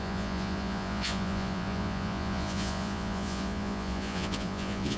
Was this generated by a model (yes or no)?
yes